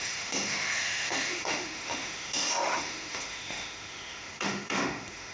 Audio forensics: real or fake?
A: fake